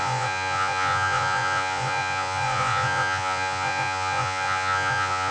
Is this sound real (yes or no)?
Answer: no